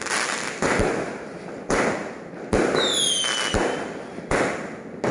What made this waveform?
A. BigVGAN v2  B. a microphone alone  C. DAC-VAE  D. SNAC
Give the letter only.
B